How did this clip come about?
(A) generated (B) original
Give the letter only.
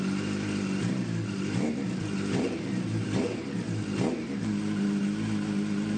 B